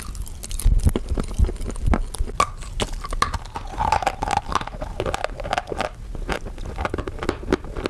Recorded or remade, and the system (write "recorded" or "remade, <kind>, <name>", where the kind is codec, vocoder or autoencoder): recorded